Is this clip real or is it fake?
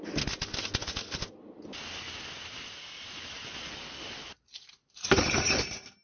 real